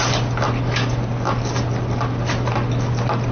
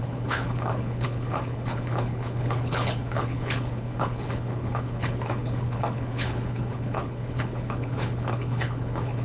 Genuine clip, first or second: first